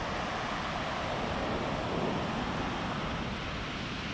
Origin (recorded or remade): recorded